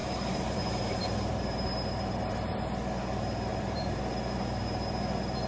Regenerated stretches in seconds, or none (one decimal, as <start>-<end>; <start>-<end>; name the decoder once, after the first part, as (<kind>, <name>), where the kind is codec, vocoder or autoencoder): 0.0-2.6 (vocoder, BigVGAN v2); 3.5-4.0

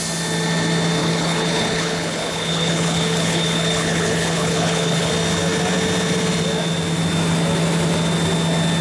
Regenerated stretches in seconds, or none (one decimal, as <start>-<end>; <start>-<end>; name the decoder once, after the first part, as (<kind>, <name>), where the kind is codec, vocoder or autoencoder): 1.0-5.1 (codec, HILCodec)